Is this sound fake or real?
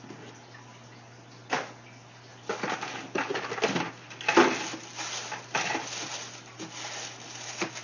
real